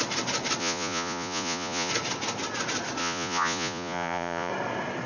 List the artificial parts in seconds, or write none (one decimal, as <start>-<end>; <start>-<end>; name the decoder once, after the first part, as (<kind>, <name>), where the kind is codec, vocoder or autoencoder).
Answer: 0.6-1.9 (vocoder, Vocos); 3.0-4.5